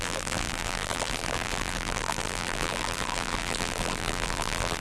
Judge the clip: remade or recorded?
remade